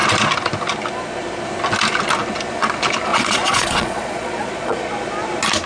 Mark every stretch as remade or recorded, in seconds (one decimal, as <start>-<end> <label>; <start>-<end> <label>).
0.0-3.1 recorded; 3.1-4.9 remade; 4.9-5.7 recorded